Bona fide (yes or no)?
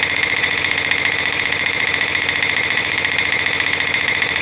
no